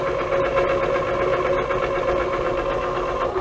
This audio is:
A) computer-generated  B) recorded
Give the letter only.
B